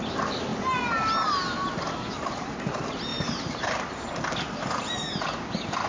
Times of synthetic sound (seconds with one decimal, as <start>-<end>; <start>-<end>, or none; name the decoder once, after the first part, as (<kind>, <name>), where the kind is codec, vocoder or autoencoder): 3.1-4.2 (vocoder, BigVGAN v2)